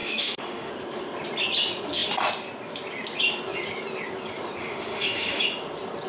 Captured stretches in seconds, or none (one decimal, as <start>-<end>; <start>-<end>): 0.7-4.6; 5.4-6.1